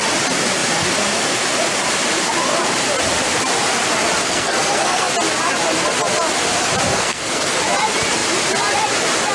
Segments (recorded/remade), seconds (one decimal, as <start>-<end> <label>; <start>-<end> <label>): 0.0-4.2 recorded; 4.2-5.1 remade; 5.1-6.9 recorded; 6.9-7.6 remade; 7.6-9.3 recorded